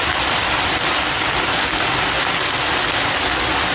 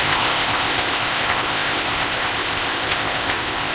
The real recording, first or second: first